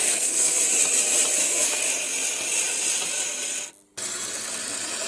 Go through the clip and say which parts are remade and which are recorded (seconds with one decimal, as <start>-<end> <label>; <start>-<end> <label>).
0.0-0.7 remade; 0.7-1.3 recorded; 1.3-1.8 remade; 1.8-5.1 recorded